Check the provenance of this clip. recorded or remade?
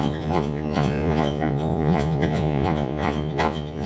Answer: remade